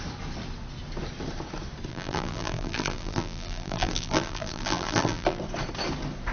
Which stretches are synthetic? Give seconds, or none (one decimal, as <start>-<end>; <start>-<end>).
1.9-5.4